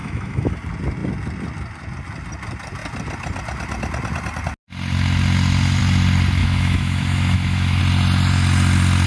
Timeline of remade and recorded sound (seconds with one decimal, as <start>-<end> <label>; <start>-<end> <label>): 0.0-0.5 remade; 0.5-6.4 recorded; 6.4-7.8 remade; 7.8-9.1 recorded